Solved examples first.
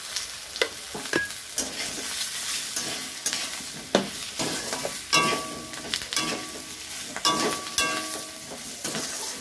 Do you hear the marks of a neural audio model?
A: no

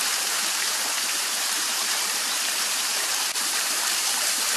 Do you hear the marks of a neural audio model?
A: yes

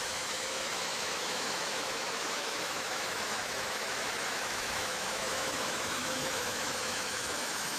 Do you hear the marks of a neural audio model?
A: yes